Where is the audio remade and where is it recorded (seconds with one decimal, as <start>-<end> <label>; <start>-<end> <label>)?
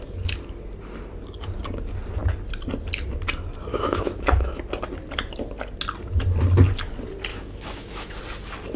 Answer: 0.0-3.7 recorded; 3.7-4.6 remade; 4.6-7.3 recorded; 7.3-8.2 remade; 8.2-8.8 recorded